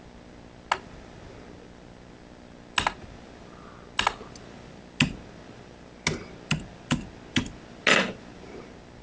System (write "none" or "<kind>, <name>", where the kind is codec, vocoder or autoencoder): none